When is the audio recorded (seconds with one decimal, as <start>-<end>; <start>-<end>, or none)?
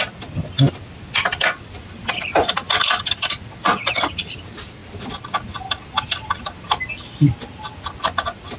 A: 0.0-8.6